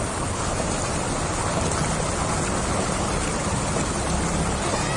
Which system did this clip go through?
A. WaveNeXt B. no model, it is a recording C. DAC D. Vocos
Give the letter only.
B